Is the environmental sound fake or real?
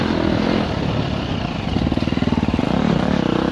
real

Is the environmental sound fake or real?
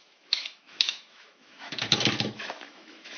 fake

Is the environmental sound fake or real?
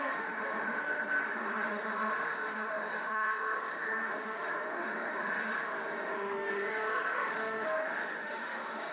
fake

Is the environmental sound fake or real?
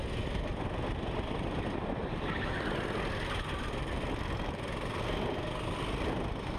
real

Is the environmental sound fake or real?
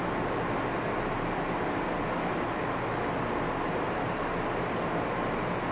real